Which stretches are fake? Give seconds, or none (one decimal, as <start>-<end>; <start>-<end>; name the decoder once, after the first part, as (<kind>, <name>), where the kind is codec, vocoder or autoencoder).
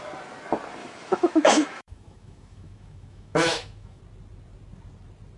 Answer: 0.8-4.0 (autoencoder, DAC-VAE)